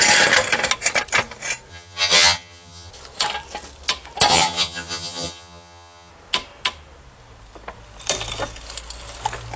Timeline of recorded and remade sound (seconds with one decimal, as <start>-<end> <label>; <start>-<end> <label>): 0.0-1.7 recorded; 1.7-2.9 remade; 2.9-4.3 recorded; 4.3-6.1 remade; 6.1-9.6 recorded